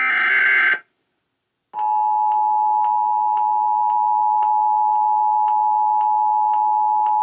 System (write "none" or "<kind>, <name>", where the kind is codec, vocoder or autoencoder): none